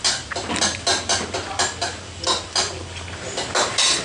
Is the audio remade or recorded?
recorded